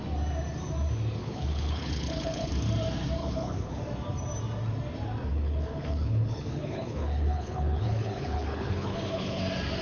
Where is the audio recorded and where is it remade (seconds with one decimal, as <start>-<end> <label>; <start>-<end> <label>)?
0.0-1.2 recorded; 1.2-2.5 remade; 2.5-3.2 recorded; 3.2-3.8 remade; 3.8-5.3 recorded; 5.3-9.4 remade; 9.4-9.8 recorded